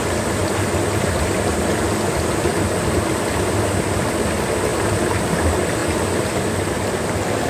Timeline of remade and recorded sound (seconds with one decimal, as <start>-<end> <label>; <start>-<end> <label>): 0.0-7.5 recorded